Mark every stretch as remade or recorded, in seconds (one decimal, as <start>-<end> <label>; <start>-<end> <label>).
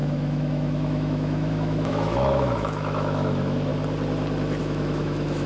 0.0-3.7 remade; 3.7-4.6 recorded; 4.6-5.5 remade